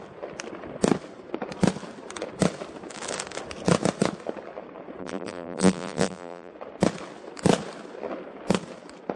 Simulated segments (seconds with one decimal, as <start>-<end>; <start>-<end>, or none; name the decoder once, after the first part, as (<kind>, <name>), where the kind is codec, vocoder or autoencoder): 5.0-6.5 (vocoder, BigVGAN v2)